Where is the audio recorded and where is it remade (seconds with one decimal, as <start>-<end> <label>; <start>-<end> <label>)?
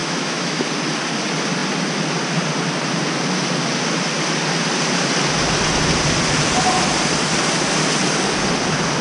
0.0-0.7 remade; 0.7-9.0 recorded